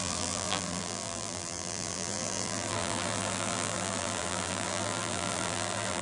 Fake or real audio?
fake